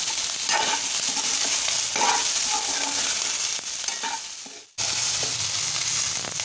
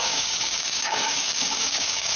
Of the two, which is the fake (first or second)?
second